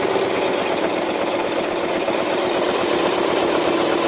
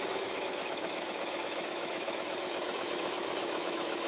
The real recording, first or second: first